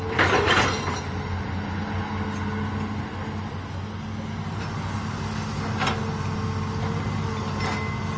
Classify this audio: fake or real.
real